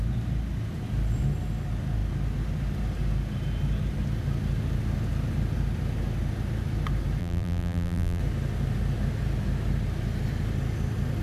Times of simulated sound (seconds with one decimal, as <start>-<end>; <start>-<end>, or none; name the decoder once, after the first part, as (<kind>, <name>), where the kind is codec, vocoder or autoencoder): 7.2-8.2 (vocoder, BigVGAN v2)